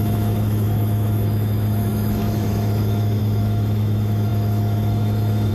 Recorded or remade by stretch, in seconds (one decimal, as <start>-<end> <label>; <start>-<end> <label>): 0.0-5.5 remade